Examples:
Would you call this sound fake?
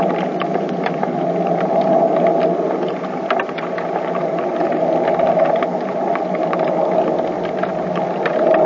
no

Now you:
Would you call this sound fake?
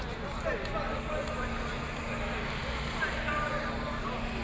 no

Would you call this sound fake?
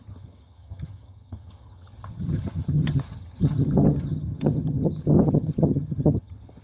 yes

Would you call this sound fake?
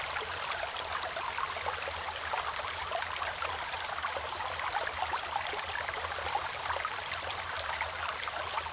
no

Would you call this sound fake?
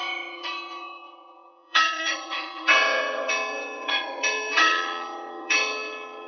yes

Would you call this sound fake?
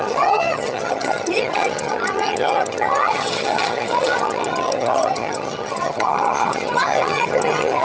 yes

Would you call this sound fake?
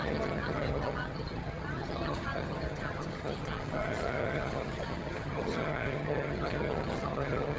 yes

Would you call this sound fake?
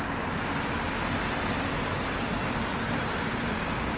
no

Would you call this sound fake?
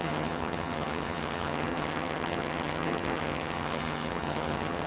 yes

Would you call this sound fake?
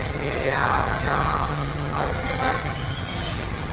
yes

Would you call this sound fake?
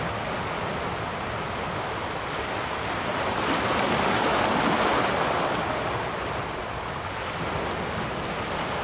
no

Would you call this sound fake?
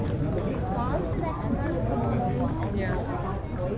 no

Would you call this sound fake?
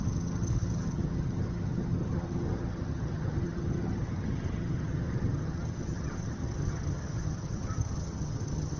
yes